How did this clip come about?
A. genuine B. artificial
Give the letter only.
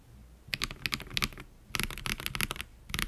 A